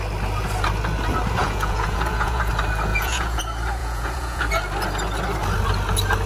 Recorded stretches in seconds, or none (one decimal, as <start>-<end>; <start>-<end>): 0.0-1.4; 2.5-2.9; 3.4-3.8; 4.4-6.3